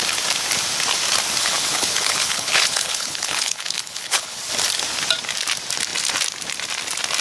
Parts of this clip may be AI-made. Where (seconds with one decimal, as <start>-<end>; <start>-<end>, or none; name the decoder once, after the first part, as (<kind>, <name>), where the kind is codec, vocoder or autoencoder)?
1.4-4.4 (codec, HILCodec)